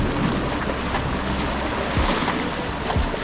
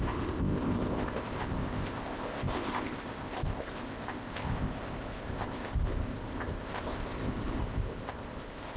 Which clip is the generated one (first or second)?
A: second